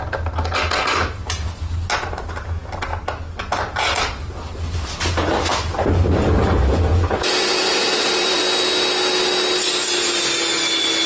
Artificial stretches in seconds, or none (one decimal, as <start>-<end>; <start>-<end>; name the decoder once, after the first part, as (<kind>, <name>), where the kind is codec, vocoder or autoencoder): 5.5-8.4 (vocoder, BigVGAN v2)